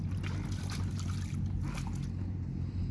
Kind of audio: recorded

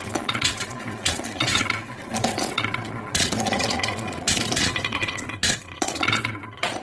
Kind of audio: remade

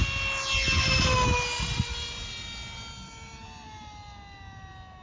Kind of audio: recorded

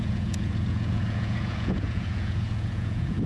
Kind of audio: remade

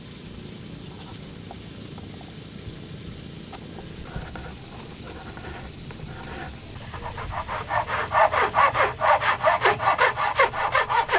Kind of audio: recorded